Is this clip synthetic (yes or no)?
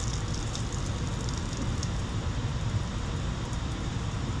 yes